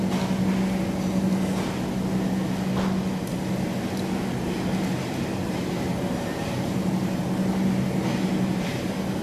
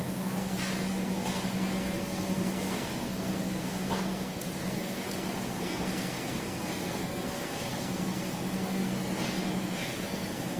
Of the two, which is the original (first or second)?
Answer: first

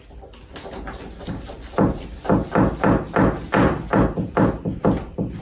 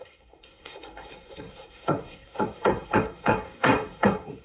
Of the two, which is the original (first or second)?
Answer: first